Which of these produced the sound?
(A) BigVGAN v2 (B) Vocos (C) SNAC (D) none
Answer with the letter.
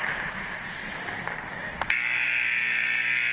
D